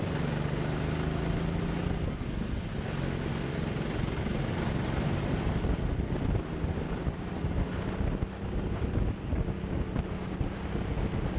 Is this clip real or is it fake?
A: real